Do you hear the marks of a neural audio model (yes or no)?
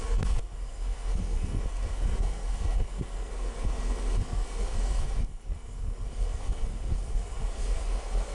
yes